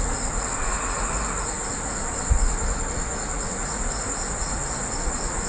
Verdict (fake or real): fake